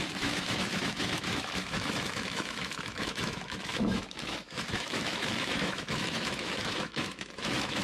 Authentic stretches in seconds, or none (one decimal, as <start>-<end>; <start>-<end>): none